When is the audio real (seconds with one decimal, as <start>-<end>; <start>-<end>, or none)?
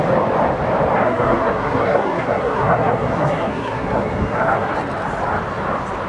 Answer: 0.0-1.0; 4.7-6.1